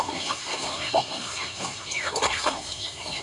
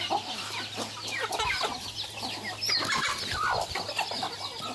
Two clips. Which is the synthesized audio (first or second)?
first